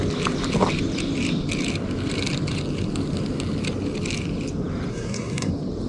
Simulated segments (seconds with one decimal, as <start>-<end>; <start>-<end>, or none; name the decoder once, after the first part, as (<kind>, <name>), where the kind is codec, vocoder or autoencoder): 4.9-5.5 (codec, SNAC)